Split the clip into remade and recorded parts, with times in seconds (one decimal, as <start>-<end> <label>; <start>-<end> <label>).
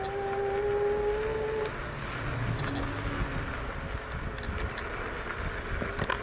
0.0-6.2 recorded